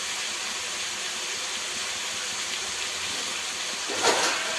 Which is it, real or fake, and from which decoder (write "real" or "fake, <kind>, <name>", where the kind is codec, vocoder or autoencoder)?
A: real